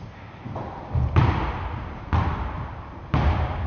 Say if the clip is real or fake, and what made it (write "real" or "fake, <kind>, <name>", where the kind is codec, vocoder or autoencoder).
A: real